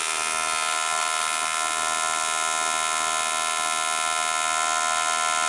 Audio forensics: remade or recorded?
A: recorded